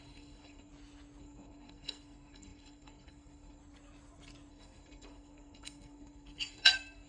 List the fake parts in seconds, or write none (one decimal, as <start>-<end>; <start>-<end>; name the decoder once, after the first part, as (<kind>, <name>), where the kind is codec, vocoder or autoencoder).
0.0-0.7 (codec, SNAC); 1.2-3.6; 4.5-7.1